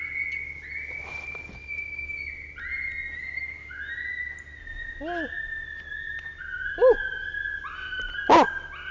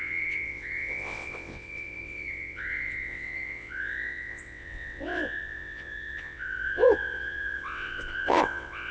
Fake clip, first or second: second